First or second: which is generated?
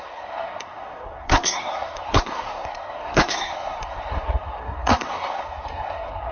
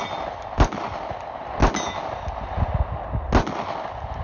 first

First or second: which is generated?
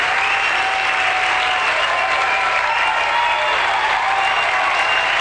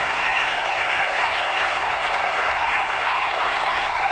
second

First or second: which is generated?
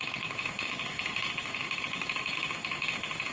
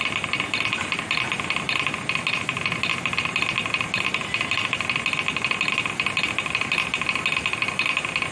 first